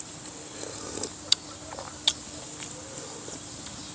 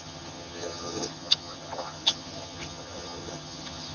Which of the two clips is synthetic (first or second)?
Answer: second